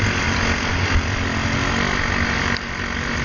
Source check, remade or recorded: recorded